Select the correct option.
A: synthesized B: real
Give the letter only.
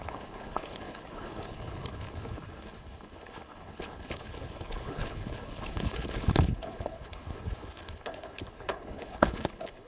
A